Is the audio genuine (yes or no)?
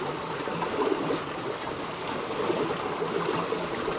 yes